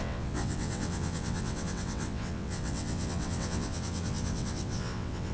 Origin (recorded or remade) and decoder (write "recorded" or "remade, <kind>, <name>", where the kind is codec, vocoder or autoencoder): remade, vocoder, WaveNeXt